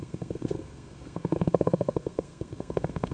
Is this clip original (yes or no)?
no